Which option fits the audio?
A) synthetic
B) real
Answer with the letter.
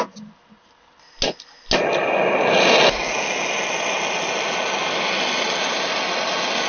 B